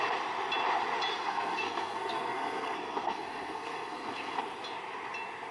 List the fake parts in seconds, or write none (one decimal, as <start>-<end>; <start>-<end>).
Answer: 1.1-4.4